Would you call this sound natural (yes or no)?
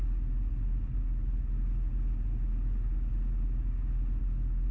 yes